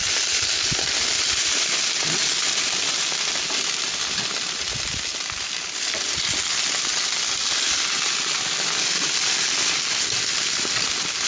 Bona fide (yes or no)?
yes